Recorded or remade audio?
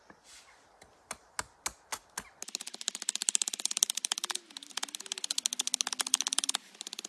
recorded